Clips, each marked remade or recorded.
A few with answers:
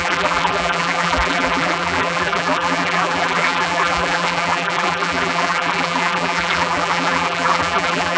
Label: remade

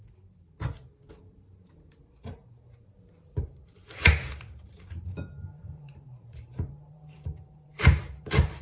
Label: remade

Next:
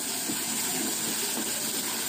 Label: recorded